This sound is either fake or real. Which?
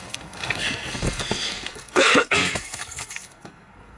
fake